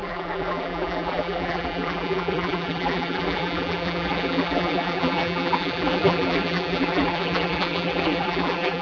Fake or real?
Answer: fake